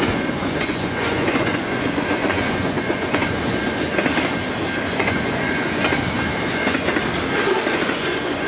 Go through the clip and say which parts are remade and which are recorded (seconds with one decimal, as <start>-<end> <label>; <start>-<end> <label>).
0.0-3.9 remade; 3.9-4.9 recorded; 4.9-5.8 remade; 5.8-6.5 recorded; 6.5-6.9 remade; 6.9-7.7 recorded; 7.7-8.5 remade